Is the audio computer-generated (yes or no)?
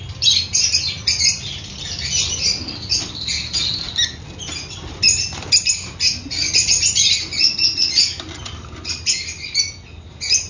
no